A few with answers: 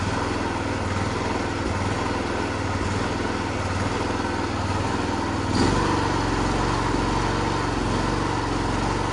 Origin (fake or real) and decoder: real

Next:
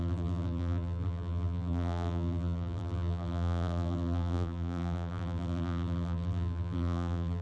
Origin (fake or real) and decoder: fake, vocoder, BigVGAN v2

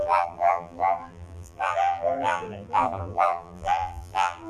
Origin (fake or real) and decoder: fake, vocoder, BigVGAN v2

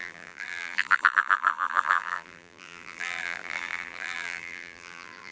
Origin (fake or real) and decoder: fake, vocoder, BigVGAN v2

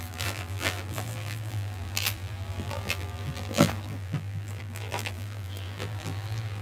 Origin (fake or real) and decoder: fake, vocoder, BigVGAN v2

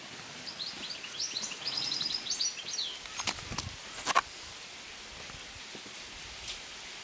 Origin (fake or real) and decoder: real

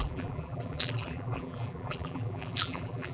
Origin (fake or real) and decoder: fake, vocoder, BigVGAN v2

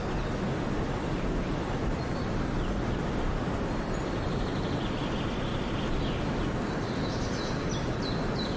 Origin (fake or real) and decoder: real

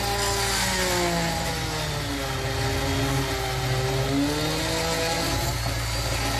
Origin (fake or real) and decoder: real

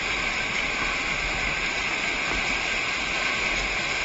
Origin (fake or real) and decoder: real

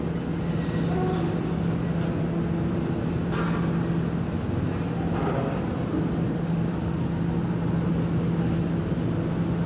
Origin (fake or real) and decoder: real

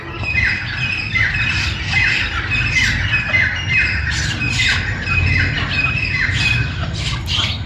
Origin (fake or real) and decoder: real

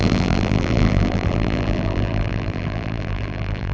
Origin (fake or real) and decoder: fake, vocoder, BigVGAN v2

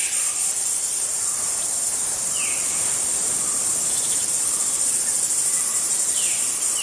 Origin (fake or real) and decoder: fake, vocoder, BigVGAN v2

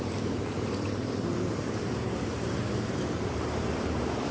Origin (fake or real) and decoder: fake, vocoder, BigVGAN v2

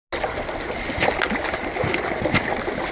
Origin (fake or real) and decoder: real